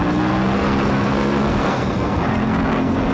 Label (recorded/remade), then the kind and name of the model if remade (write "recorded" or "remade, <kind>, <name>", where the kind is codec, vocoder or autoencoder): remade, codec, SNAC